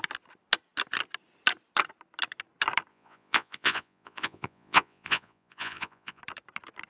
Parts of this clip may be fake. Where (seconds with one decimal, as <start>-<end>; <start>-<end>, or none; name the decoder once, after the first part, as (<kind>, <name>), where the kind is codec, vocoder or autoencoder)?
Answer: 2.9-6.2 (vocoder, Vocos)